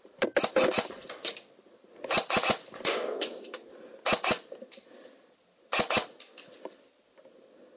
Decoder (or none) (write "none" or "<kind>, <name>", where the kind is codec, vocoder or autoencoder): none